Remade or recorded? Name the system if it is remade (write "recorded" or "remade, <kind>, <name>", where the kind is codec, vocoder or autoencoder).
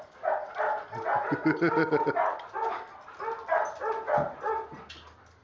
recorded